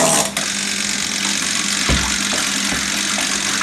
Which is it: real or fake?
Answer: real